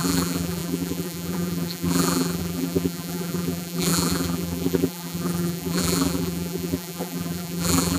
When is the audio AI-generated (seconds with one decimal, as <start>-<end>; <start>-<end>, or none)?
0.0-8.0